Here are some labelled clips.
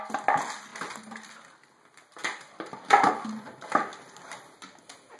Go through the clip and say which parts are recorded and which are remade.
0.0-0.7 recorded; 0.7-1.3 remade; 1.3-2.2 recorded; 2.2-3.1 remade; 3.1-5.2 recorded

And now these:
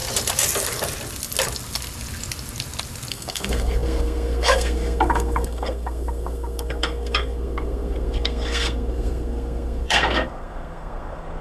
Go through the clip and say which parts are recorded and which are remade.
0.0-3.1 recorded; 3.1-11.4 remade

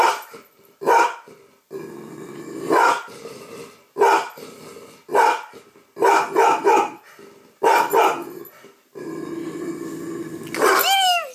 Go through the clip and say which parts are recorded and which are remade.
0.0-3.2 remade; 3.2-11.3 recorded

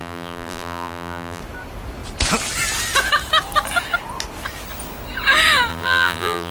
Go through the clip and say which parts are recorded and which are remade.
0.0-1.4 remade; 1.4-5.7 recorded; 5.7-6.5 remade

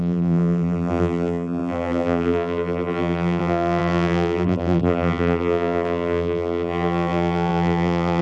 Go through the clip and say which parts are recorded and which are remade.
0.0-8.2 remade

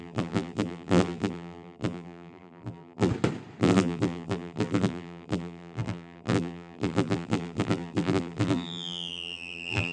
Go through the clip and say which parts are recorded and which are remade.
0.0-3.1 remade; 3.1-3.6 recorded; 3.6-9.9 remade

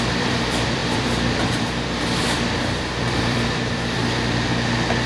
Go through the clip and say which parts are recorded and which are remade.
0.0-4.0 remade; 4.0-5.1 recorded